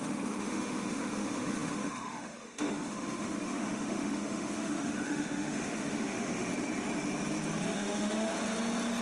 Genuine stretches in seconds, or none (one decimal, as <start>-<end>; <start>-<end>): 6.5-7.6; 8.3-9.0